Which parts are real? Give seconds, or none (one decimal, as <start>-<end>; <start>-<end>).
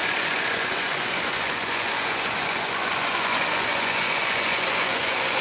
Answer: none